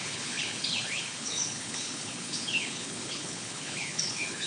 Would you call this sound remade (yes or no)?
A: yes